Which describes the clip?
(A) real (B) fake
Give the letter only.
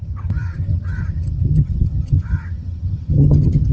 B